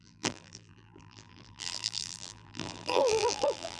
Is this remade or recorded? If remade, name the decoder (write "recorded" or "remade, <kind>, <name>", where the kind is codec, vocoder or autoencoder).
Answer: remade, vocoder, BigVGAN v2